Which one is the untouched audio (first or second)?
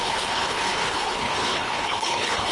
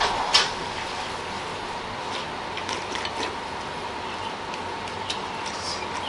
second